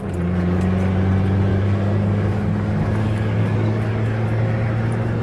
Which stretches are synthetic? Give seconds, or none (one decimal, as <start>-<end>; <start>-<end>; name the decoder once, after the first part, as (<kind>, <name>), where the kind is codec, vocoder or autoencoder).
1.5-4.5 (codec, DAC)

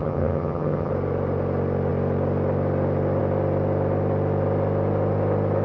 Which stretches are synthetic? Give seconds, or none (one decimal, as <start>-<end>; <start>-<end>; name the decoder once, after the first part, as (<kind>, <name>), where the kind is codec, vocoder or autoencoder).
0.0-0.9 (vocoder, HiFi-GAN)

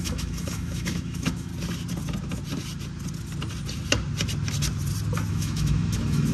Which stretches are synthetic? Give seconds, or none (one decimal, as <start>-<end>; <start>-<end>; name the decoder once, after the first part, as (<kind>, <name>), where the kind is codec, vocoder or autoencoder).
0.0-1.5 (autoencoder, DAC-VAE); 5.3-6.3

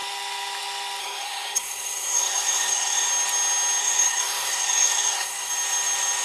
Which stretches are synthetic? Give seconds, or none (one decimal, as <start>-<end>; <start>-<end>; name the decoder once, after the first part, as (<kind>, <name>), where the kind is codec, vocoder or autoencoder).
1.0-3.1 (codec, SNAC); 3.8-5.5

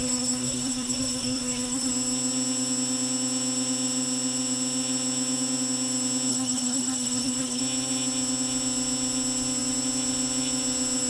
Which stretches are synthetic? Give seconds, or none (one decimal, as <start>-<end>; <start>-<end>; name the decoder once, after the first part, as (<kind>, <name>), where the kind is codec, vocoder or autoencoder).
0.0-1.9 (codec, SNAC); 6.3-7.6

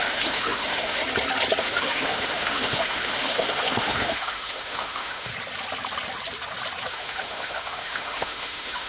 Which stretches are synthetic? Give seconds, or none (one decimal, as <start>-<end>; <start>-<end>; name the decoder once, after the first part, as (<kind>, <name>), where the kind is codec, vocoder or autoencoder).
0.0-1.0 (autoencoder, DAC-VAE); 1.6-5.3; 6.9-8.9